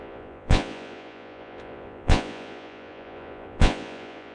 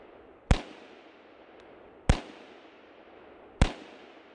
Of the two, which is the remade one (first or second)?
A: first